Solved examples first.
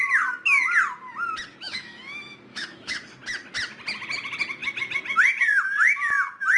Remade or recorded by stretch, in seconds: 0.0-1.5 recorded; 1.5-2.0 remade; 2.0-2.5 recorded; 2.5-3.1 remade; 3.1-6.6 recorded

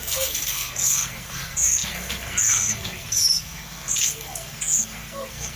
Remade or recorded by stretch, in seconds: 0.0-5.6 remade

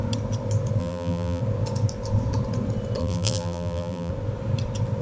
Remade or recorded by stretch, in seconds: 0.0-0.8 recorded; 0.8-1.4 remade; 1.4-3.0 recorded; 3.0-4.1 remade; 4.1-5.0 recorded

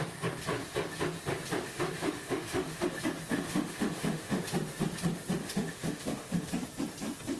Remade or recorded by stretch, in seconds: 0.0-1.6 recorded; 1.6-2.9 remade; 2.9-3.3 recorded; 3.3-4.4 remade; 4.4-5.4 recorded; 5.4-6.5 remade; 6.5-7.4 recorded